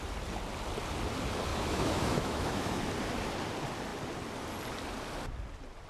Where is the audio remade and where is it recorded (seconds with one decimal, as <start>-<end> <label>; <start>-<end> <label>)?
0.0-1.5 recorded; 1.5-2.8 remade; 2.8-5.9 recorded

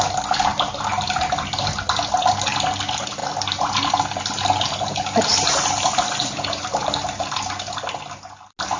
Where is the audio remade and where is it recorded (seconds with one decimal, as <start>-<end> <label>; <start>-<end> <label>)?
0.0-8.8 recorded